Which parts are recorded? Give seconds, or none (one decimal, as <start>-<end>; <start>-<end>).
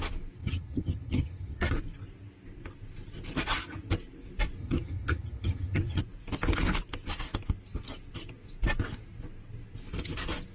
0.0-0.4; 1.7-4.6; 6.0-10.5